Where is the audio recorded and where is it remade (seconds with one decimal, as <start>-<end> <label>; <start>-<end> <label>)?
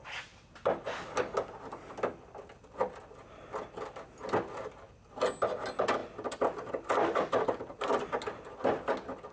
0.0-9.3 recorded